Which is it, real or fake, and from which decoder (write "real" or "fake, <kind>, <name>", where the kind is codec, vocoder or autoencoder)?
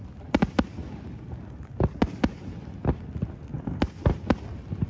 real